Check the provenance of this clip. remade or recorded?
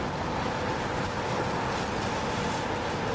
recorded